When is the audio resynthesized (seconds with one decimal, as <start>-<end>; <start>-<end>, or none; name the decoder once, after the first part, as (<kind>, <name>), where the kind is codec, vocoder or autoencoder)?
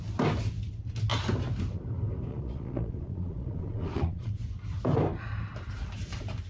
2.3-4.3 (vocoder, Vocos)